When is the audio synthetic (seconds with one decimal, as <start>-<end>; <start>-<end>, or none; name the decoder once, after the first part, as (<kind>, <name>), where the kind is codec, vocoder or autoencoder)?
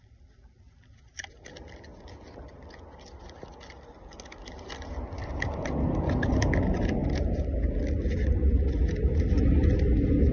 none